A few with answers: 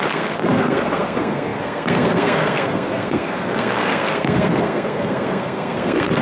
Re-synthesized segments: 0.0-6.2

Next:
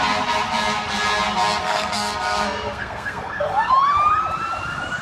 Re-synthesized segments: 1.6-3.7

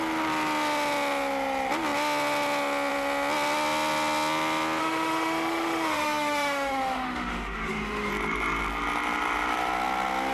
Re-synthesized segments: 4.8-8.1

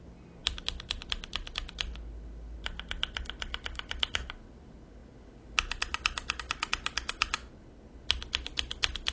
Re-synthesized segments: none

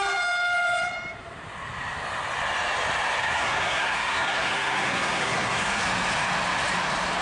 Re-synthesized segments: 3.2-5.8